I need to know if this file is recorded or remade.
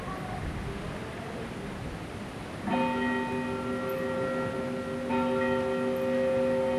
recorded